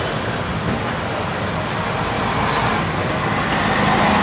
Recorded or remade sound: recorded